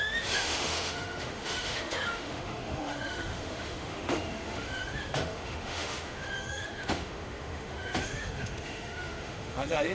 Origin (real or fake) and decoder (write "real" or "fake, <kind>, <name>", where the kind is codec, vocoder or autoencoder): fake, autoencoder, DAC-VAE